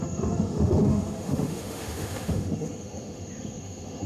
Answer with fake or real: fake